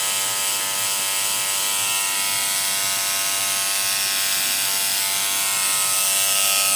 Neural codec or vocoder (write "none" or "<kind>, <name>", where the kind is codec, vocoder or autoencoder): none